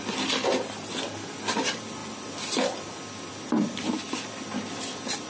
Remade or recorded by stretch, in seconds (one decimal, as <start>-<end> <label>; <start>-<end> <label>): 0.0-5.3 recorded